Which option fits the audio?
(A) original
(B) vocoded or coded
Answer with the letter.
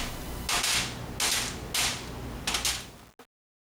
A